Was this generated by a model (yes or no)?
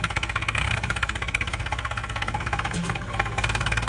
yes